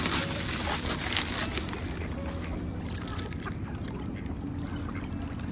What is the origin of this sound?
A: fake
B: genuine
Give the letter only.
B